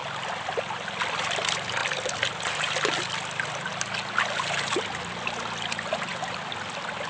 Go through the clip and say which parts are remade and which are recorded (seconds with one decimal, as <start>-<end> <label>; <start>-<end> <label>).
0.0-7.1 recorded